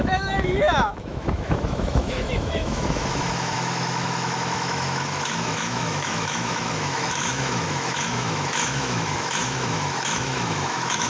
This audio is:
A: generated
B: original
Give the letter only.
A